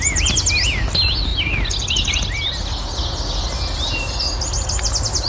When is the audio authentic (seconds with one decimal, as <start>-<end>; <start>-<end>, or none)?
0.0-5.3